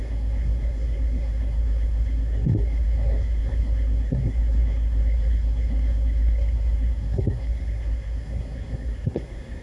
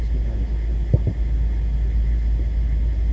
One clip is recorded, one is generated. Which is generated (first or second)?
first